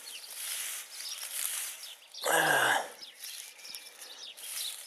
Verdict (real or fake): fake